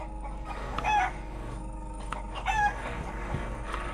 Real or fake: fake